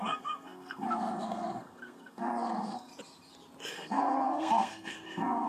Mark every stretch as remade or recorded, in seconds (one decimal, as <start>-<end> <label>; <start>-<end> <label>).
0.0-2.9 remade; 2.9-3.7 recorded; 3.7-5.5 remade